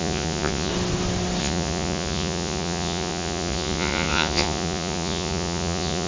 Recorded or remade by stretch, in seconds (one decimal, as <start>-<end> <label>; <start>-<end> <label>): 0.0-0.7 remade; 0.7-1.4 recorded; 1.4-6.1 remade